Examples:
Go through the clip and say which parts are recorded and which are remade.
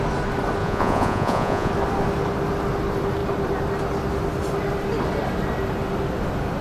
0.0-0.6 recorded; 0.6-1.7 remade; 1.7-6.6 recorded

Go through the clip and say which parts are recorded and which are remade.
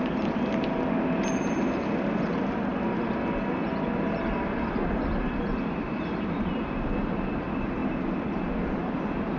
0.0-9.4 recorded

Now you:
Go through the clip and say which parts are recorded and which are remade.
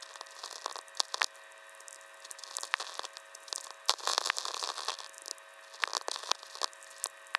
0.0-7.4 recorded